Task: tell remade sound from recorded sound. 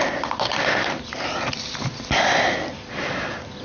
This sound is recorded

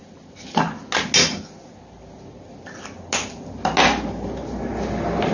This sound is recorded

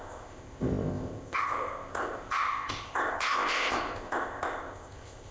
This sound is remade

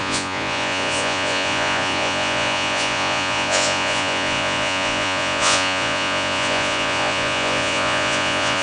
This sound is remade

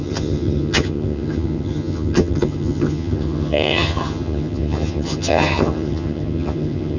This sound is remade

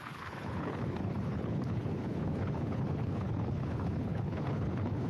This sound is remade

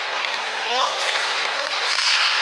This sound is remade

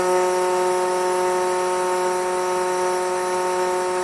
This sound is recorded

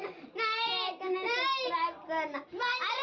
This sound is recorded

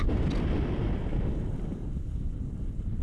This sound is remade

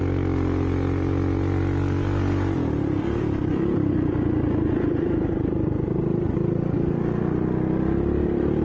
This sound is recorded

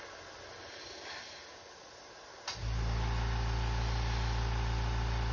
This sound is recorded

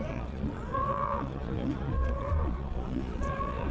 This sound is remade